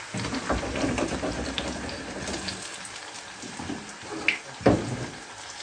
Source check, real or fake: real